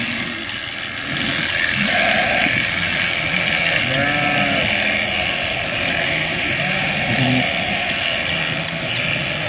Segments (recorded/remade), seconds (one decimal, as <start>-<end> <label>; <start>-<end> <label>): 0.0-6.3 recorded; 6.3-6.9 remade; 6.9-9.5 recorded